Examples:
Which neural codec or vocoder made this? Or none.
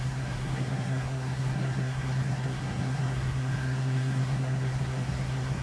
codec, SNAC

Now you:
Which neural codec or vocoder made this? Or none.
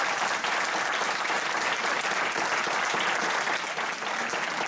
none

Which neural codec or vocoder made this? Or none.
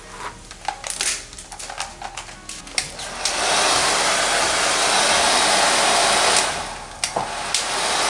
none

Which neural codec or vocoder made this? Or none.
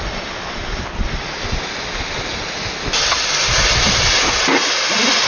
none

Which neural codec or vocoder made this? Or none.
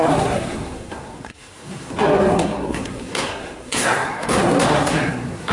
codec, SNAC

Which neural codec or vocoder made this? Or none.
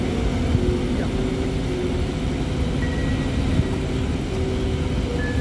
none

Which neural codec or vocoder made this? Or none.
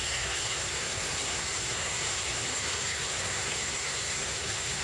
codec, SNAC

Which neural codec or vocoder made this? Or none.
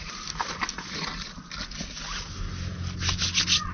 none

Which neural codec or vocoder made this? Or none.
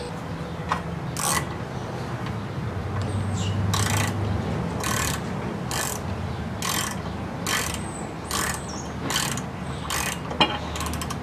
none